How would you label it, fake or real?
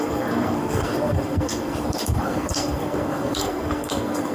fake